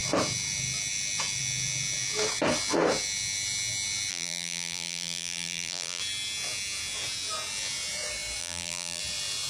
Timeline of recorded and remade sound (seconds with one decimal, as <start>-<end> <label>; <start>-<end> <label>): 0.0-4.1 recorded; 4.1-6.0 remade; 6.0-8.4 recorded; 8.4-9.0 remade; 9.0-9.5 recorded

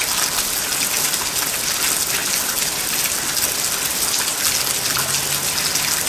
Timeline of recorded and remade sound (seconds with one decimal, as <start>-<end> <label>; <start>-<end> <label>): 0.0-6.1 recorded